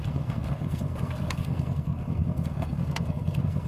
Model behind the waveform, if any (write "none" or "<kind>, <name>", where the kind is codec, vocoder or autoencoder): codec, SNAC